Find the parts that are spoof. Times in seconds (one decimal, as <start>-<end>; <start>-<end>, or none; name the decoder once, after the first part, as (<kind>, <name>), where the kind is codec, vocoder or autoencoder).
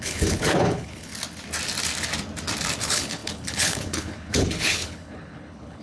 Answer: 0.0-1.1 (codec, HILCodec); 2.8-5.8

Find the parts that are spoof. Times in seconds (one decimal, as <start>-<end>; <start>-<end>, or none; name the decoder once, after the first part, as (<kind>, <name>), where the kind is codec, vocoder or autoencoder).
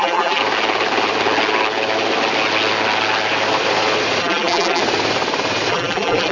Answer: 0.0-0.4 (vocoder, BigVGAN v2); 4.2-4.8; 5.7-6.3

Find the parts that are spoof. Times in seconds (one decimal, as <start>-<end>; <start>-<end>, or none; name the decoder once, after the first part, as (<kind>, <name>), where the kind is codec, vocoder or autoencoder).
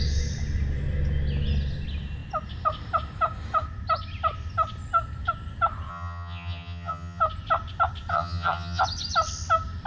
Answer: 5.9-7.2 (vocoder, HiFi-GAN); 8.1-8.8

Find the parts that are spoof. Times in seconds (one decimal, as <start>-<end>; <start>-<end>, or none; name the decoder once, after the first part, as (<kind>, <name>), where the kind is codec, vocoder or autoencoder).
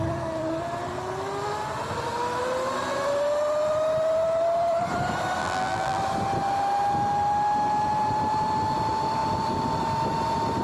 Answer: 5.4-6.0 (vocoder, BigVGAN v2)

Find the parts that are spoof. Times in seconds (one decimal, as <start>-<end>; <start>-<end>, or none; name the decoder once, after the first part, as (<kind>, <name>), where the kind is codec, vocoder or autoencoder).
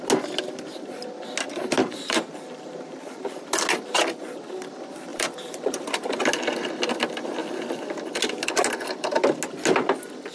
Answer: 1.8-3.2 (vocoder, BigVGAN v2); 5.1-5.8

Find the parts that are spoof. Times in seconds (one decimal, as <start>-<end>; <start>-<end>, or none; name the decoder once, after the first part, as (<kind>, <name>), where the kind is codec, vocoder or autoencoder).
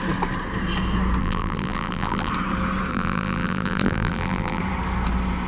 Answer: 1.2-2.3 (vocoder, BigVGAN v2); 2.9-4.6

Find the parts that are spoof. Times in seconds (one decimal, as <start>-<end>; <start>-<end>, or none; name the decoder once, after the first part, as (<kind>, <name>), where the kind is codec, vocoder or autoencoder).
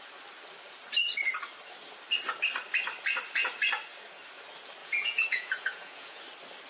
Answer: 4.8-6.2 (vocoder, Vocos)